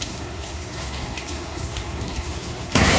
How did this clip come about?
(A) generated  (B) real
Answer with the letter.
A